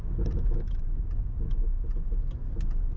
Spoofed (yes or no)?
no